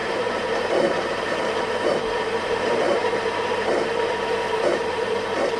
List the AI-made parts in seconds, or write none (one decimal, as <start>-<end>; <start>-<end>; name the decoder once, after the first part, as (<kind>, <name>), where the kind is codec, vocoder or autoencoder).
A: 0.0-5.6 (vocoder, BigVGAN v2)